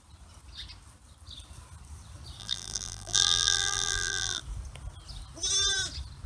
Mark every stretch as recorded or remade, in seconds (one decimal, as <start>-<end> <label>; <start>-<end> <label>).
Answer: 0.0-2.4 recorded; 2.4-4.4 remade; 4.4-6.3 recorded